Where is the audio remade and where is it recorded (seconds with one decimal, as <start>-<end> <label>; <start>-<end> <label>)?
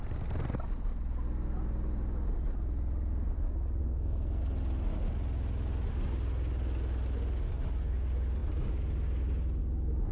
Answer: 0.0-3.8 recorded; 3.8-4.4 remade; 4.4-10.1 recorded